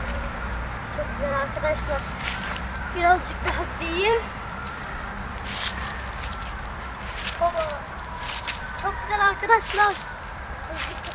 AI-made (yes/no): yes